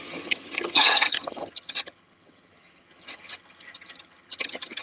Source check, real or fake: fake